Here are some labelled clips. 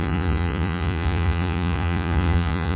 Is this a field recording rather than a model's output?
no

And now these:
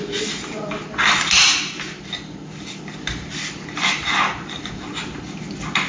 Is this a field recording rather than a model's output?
yes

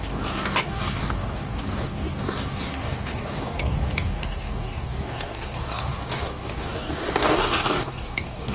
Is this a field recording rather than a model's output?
no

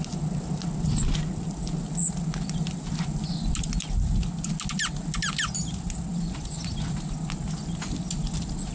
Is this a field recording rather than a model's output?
yes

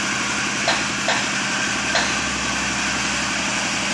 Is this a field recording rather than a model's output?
yes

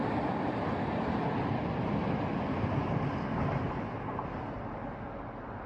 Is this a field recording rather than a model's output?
yes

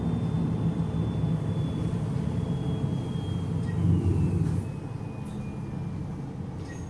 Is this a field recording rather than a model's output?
yes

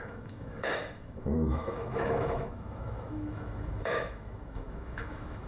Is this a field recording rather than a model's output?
no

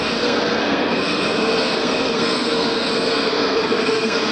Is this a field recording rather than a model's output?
no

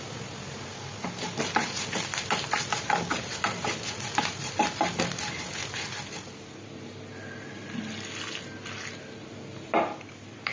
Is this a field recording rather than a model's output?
yes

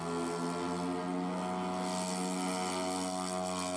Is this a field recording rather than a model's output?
yes